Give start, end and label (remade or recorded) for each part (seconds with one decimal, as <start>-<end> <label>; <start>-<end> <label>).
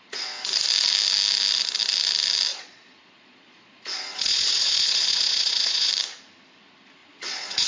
0.0-2.5 recorded; 2.5-5.9 remade; 5.9-7.0 recorded; 7.0-7.7 remade